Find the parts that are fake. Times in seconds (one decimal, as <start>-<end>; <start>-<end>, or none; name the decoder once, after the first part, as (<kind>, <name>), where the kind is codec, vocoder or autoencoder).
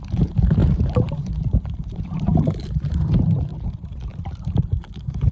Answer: 0.0-5.3 (vocoder, BigVGAN v2)